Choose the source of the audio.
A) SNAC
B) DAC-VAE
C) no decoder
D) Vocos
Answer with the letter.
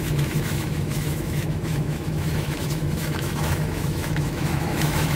B